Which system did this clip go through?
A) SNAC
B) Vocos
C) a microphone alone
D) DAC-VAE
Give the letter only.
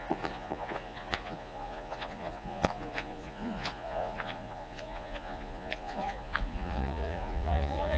B